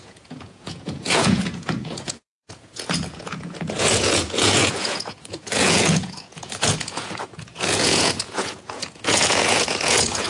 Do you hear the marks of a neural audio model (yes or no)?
yes